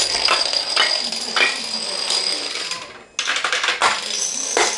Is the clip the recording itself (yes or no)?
yes